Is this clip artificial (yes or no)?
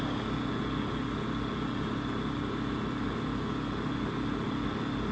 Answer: no